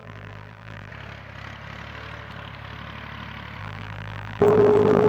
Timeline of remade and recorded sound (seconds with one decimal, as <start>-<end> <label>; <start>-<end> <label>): 0.0-0.9 remade; 0.9-3.6 recorded; 3.6-5.1 remade